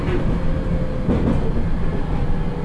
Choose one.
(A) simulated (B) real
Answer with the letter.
B